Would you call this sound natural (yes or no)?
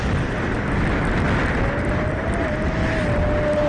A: yes